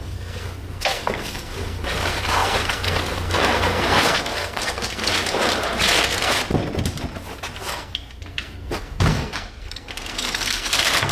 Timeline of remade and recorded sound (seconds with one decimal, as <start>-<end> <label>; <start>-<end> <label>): 0.0-5.1 remade; 5.1-5.9 recorded; 5.9-6.4 remade; 6.4-7.6 recorded; 7.6-11.1 remade